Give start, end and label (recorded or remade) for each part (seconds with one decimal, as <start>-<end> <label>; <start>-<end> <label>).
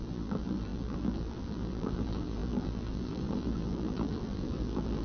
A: 0.0-5.0 remade